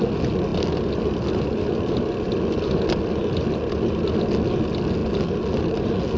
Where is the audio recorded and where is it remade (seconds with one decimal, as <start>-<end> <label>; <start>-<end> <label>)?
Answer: 0.0-6.2 recorded